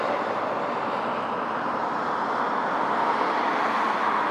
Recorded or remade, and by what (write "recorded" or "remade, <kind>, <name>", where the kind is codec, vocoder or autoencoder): recorded